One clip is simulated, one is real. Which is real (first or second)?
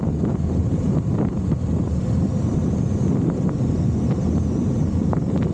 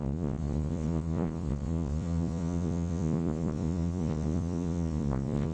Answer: first